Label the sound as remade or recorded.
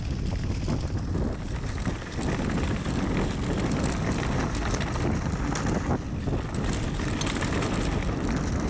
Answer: recorded